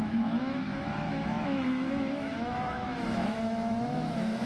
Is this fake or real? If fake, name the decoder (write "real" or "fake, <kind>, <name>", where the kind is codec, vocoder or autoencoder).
fake, autoencoder, DAC-VAE